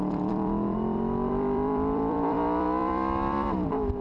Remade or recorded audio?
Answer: remade